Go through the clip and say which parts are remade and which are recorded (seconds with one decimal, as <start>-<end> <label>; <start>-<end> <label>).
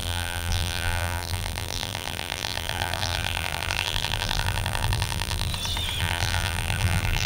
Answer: 0.0-5.5 remade; 5.5-6.0 recorded; 6.0-7.3 remade